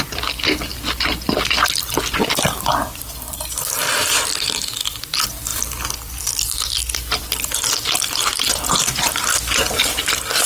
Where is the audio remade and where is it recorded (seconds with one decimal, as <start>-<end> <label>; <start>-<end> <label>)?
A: 0.0-10.5 remade